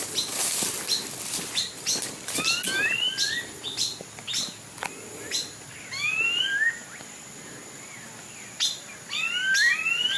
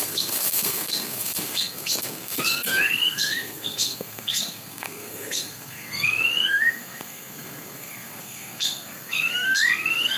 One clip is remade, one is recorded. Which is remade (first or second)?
second